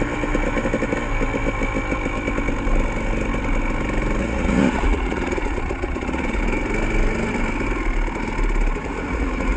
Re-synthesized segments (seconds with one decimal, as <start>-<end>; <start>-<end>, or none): 4.2-6.4; 8.8-9.6